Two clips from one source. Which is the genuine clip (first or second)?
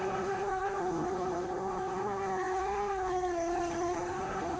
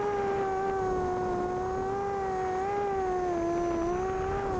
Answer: second